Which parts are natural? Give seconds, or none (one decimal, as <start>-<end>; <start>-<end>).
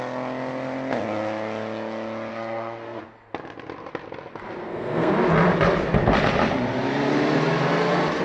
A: 0.0-2.3; 3.0-4.6; 5.1-8.2